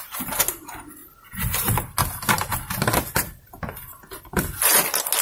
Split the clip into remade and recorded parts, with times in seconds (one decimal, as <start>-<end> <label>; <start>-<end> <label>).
0.0-5.2 recorded